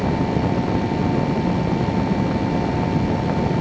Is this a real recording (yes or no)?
yes